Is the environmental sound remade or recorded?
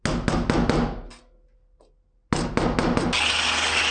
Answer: recorded